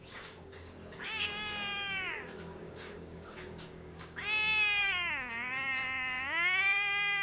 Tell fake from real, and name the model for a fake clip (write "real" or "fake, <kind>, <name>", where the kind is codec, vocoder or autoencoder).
fake, codec, DAC